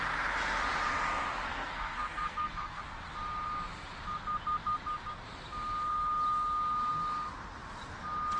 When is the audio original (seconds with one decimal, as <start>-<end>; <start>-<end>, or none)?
0.0-1.5; 2.8-8.4